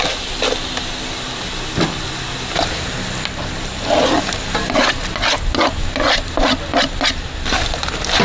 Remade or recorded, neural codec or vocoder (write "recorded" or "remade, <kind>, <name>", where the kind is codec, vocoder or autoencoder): recorded